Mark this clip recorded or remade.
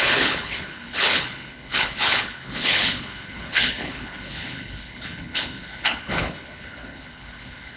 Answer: remade